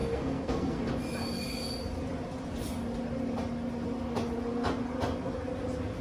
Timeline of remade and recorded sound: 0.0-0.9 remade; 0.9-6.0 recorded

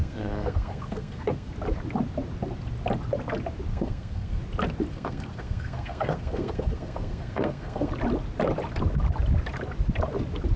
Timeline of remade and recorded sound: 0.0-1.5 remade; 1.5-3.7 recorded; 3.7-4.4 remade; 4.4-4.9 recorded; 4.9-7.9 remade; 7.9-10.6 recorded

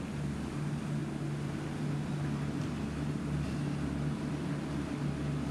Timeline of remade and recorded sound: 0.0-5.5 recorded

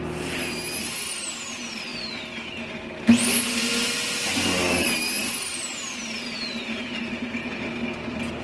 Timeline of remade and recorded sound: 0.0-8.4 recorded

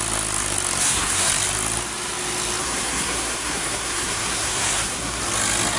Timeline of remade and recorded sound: 0.0-0.8 recorded; 0.8-1.3 remade; 1.3-2.6 recorded; 2.6-5.2 remade; 5.2-5.8 recorded